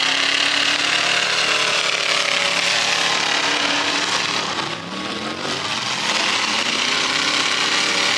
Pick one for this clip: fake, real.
fake